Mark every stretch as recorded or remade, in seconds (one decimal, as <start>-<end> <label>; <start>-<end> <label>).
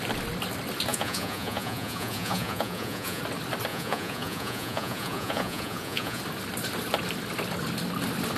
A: 0.0-0.9 recorded; 0.9-3.2 remade; 3.2-3.7 recorded; 3.7-6.2 remade; 6.2-8.4 recorded